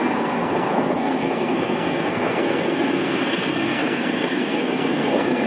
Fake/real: fake